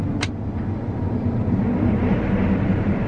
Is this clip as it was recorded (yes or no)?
yes